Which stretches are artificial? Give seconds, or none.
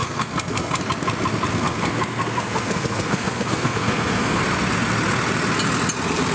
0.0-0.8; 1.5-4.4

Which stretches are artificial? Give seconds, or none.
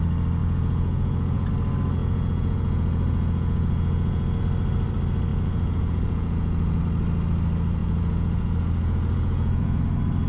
0.4-1.5; 2.0-4.4; 5.3-6.8; 7.8-9.8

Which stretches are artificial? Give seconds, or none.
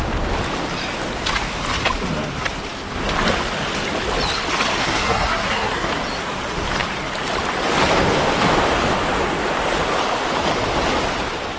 4.8-5.9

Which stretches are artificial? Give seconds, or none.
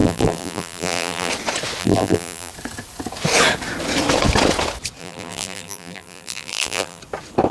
0.0-1.3; 1.8-2.5; 5.0-7.0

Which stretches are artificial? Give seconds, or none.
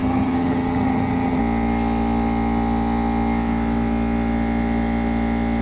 0.0-1.4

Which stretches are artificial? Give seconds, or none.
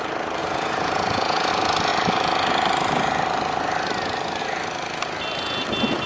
0.4-1.5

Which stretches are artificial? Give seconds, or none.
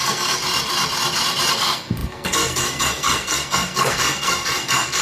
0.0-0.4; 1.5-5.0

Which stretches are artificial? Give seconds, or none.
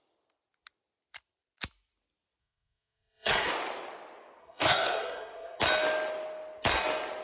2.4-3.5; 4.4-5.6